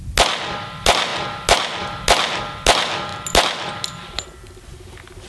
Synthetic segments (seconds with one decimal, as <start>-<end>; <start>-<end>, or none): none